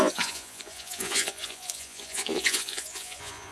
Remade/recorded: remade